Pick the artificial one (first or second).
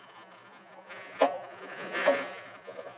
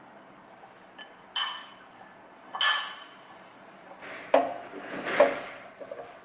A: first